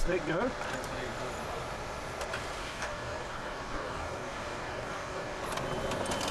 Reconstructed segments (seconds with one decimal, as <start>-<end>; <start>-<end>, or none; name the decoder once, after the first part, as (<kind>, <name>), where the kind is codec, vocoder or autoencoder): 2.6-5.4 (codec, DAC)

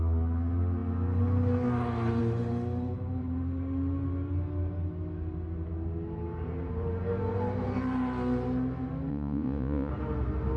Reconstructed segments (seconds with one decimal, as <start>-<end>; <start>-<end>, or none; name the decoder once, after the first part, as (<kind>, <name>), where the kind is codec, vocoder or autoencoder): 9.1-9.9 (vocoder, Vocos)

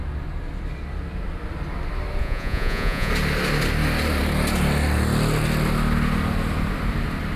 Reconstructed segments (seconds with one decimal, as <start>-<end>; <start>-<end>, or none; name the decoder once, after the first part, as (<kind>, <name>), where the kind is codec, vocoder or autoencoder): 2.2-3.1 (vocoder, Vocos)

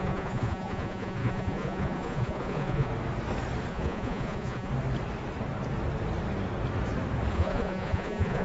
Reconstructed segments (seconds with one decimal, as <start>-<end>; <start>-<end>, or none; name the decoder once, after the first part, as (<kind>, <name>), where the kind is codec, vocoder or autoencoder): 0.0-2.9 (vocoder, Vocos); 3.7-4.7; 7.3-8.4

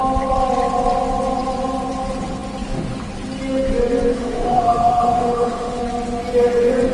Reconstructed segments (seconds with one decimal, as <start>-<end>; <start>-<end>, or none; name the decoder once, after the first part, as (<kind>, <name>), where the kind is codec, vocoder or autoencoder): 4.1-5.8 (autoencoder, DAC-VAE)

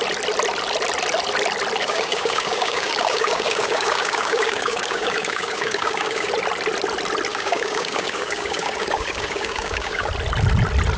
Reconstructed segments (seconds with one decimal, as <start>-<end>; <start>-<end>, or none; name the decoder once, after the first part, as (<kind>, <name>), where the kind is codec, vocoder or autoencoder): 1.8-6.3 (codec, DAC); 7.3-10.1

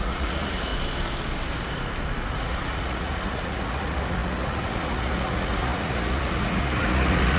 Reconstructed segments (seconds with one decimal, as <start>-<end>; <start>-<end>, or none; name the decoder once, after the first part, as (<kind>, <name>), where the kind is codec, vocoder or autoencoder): 0.0-0.7 (vocoder, Vocos); 2.3-7.4